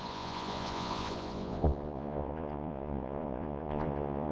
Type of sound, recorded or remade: remade